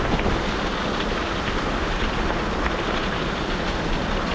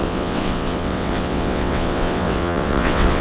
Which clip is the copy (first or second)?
second